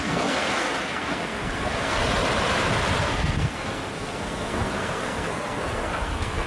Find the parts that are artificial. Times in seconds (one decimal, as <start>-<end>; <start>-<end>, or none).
0.0-2.0; 3.0-6.5